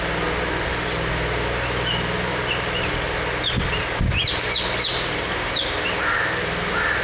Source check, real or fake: real